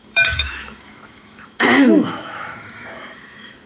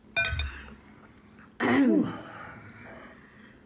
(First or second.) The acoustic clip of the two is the second